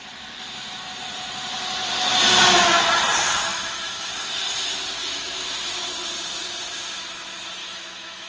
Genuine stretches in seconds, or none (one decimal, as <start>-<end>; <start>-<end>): 0.0-3.5; 4.1-5.0; 5.7-7.6